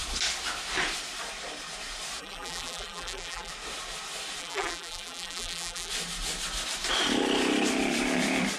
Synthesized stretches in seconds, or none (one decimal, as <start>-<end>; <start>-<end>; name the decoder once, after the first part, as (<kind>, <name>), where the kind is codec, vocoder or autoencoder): 2.2-3.5 (vocoder, BigVGAN v2); 4.4-5.9

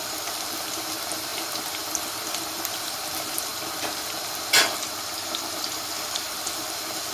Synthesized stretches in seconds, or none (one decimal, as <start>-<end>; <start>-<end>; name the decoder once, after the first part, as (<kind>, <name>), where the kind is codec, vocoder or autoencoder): 0.0-1.3 (vocoder, BigVGAN v2); 2.7-3.5; 4.6-7.1